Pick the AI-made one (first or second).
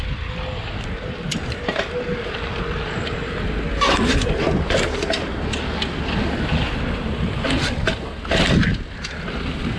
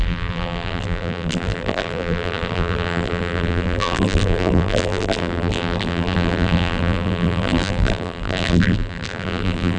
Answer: second